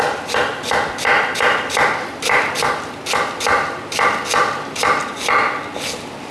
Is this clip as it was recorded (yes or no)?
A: yes